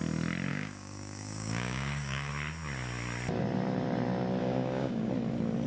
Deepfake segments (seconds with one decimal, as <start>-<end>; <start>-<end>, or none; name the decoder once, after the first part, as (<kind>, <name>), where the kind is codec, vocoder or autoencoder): 0.5-2.3 (codec, DAC); 4.4-5.1